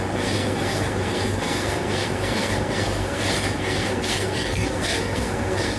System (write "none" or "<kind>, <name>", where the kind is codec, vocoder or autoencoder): codec, SNAC